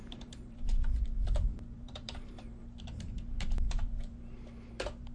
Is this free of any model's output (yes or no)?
no